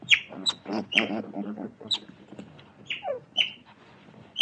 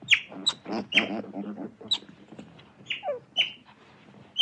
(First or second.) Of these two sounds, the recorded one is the second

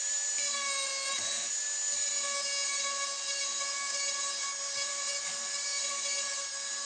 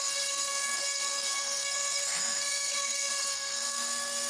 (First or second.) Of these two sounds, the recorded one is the first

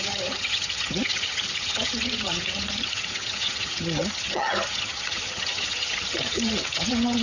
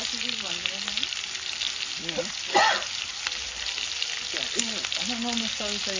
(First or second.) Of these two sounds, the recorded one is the second